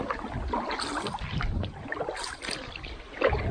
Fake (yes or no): yes